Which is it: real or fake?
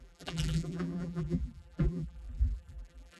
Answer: fake